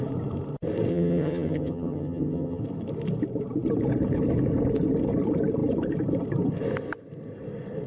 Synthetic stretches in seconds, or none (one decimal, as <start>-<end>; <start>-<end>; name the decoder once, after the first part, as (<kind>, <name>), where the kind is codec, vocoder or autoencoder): 0.9-2.6 (vocoder, HiFi-GAN)